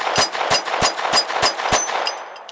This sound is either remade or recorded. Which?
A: remade